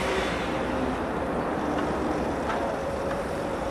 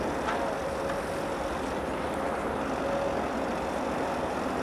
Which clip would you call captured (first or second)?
second